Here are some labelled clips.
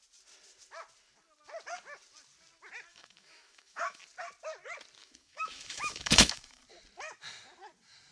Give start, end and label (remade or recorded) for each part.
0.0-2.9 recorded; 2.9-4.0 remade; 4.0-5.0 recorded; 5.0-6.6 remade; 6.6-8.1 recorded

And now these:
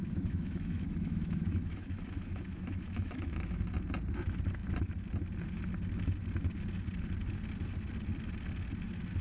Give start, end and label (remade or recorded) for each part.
0.0-3.6 remade; 3.6-9.2 recorded

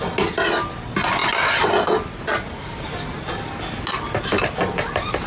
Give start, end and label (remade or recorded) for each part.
0.0-5.3 recorded